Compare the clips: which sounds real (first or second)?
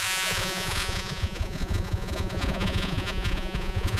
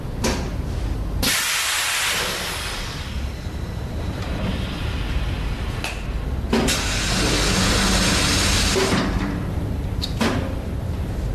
second